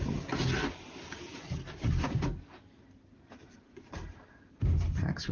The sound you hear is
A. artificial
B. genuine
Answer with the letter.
B